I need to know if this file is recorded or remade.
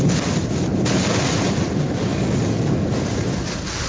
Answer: recorded